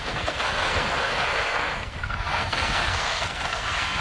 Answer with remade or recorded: remade